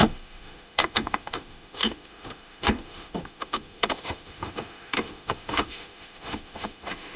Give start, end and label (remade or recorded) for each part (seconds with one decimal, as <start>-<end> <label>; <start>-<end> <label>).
0.0-7.2 remade